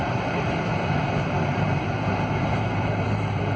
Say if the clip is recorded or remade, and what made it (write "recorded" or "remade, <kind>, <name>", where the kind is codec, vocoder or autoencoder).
remade, vocoder, BigVGAN v2